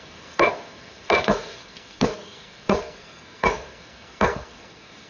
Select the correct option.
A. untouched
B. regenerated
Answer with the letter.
B